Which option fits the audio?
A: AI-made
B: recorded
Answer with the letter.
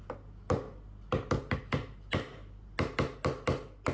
B